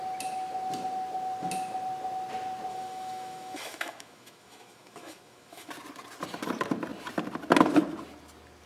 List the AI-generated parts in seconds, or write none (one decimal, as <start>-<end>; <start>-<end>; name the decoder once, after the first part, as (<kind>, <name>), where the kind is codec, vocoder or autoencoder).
2.7-5.7 (autoencoder, DAC-VAE)